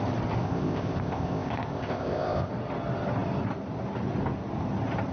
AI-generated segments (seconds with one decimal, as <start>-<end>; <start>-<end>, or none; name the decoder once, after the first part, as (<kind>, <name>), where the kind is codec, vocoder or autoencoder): 0.4-2.5 (codec, ZipCodec)